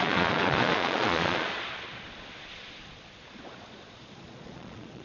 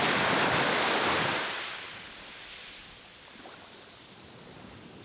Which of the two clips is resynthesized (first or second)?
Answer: first